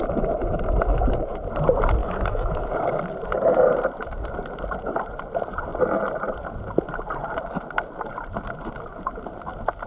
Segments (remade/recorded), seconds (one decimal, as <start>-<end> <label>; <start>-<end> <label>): 0.0-2.0 recorded; 2.0-2.7 remade; 2.7-9.9 recorded